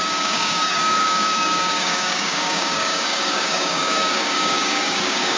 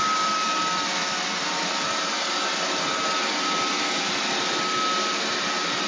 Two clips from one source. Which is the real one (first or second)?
second